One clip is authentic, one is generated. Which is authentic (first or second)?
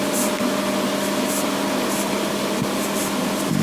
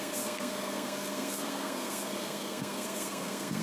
first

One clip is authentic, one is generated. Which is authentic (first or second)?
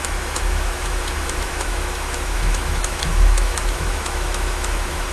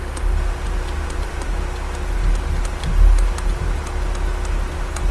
second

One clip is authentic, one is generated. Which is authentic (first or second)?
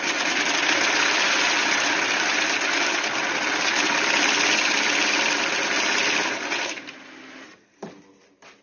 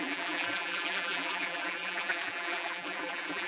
first